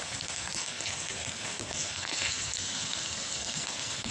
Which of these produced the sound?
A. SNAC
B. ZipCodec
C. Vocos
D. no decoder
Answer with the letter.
A